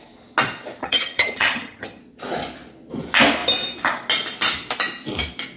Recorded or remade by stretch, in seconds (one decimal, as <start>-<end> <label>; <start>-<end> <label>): 0.0-0.8 recorded; 0.8-2.0 remade; 2.0-5.6 recorded